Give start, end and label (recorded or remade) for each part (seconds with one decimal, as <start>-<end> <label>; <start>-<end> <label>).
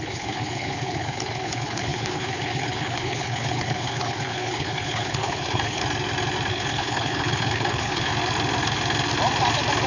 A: 0.0-5.8 remade; 5.8-6.5 recorded; 6.5-8.1 remade; 8.1-9.9 recorded